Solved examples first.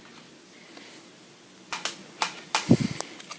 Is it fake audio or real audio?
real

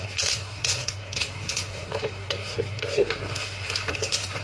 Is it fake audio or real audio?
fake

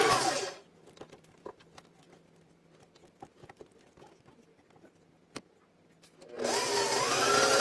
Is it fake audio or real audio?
real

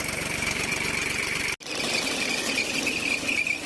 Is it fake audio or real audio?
real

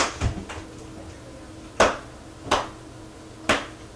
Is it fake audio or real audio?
real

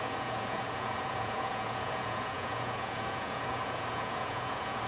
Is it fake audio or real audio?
fake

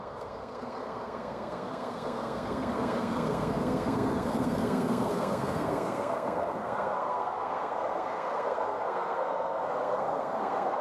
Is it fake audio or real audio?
fake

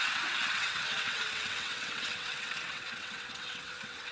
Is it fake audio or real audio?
fake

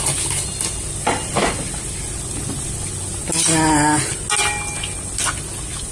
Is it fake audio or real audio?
real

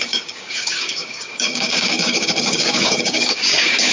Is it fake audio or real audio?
fake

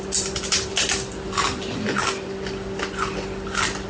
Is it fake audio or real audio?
real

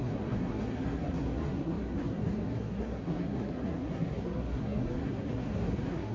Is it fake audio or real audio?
fake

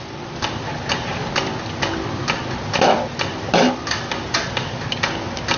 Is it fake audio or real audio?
real